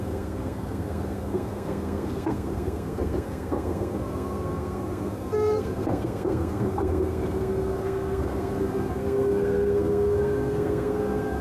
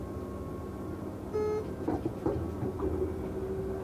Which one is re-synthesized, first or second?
first